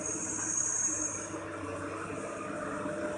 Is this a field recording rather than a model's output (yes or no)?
yes